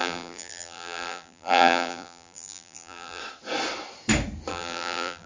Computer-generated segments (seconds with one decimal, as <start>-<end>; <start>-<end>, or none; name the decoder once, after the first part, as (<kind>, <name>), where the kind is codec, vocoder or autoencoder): 0.0-3.2 (vocoder, BigVGAN v2); 4.5-5.3